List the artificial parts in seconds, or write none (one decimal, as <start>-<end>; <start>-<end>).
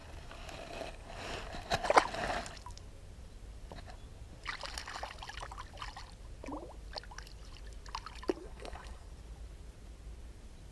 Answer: 8.4-9.1